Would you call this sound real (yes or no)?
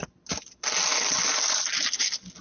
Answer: yes